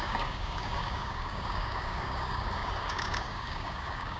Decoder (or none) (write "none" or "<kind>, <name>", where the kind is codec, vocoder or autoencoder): codec, DAC